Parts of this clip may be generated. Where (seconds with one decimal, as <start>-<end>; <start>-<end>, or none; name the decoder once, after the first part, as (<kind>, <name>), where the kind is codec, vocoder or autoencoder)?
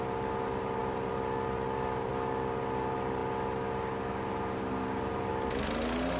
0.8-2.1 (vocoder, BigVGAN v2)